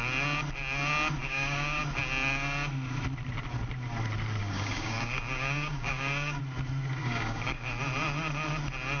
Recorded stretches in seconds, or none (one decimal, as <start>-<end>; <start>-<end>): 0.0-1.2; 1.8-4.4; 6.4-7.0; 7.7-9.0